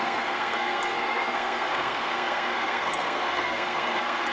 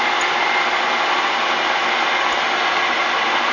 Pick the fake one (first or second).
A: first